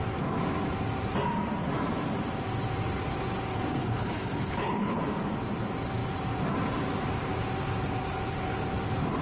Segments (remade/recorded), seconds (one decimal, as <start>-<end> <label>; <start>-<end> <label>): 0.0-3.8 recorded; 3.8-5.0 remade; 5.0-9.2 recorded